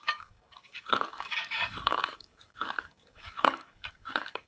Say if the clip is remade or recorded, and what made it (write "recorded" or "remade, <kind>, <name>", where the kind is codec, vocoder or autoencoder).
remade, codec, DAC